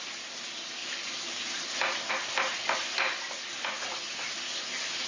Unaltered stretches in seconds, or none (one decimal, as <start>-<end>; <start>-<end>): 0.0-3.7; 4.4-5.1

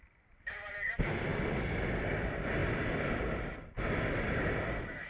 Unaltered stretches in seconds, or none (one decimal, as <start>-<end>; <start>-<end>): 0.0-5.1

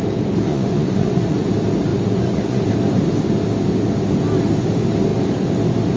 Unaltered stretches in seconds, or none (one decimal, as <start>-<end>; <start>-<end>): 0.0-0.5; 1.5-1.9; 2.6-6.0

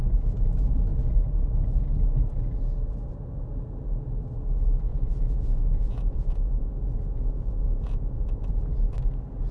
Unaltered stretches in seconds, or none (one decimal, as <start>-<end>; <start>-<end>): 0.0-4.9; 8.6-9.5

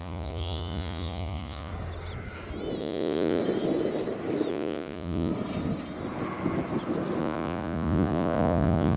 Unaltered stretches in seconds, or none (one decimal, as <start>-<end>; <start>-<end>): 1.7-2.8; 3.4-4.5; 5.3-7.2

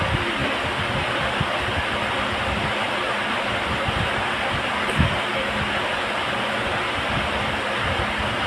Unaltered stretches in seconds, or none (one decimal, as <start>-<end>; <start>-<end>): 0.0-5.9; 6.7-8.5